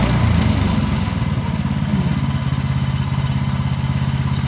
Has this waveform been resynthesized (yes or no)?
no